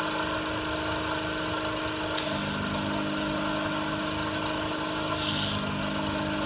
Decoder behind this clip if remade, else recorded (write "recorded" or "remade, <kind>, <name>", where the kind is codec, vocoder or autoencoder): recorded